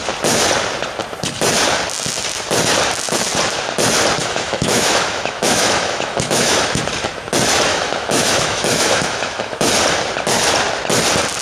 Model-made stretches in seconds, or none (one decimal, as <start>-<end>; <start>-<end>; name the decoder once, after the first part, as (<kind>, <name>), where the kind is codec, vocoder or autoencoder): 4.2-6.8 (autoencoder, DAC-VAE); 7.7-9.7